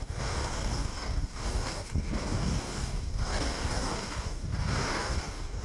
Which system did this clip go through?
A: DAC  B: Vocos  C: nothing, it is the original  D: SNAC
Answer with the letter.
A